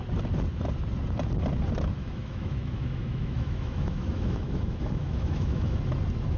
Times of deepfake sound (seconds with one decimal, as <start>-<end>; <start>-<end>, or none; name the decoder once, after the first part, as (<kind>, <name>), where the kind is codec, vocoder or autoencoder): 2.0-5.8 (autoencoder, DAC-VAE)